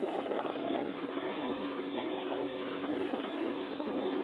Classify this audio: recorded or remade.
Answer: remade